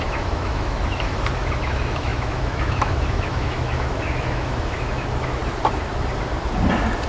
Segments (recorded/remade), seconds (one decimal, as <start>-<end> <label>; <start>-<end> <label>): 0.0-5.4 remade; 5.4-7.1 recorded

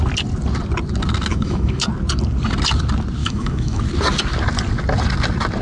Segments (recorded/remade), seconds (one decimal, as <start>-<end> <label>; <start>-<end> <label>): 0.0-1.3 recorded; 1.3-1.8 remade; 1.8-3.2 recorded; 3.2-3.8 remade; 3.8-5.6 recorded

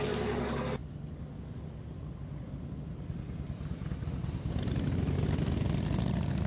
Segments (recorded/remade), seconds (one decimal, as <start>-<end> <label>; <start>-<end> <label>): 0.0-6.5 recorded

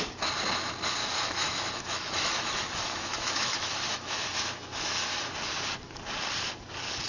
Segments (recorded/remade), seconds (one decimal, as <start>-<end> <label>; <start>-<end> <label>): 0.0-1.0 recorded; 1.0-5.3 remade; 5.3-7.1 recorded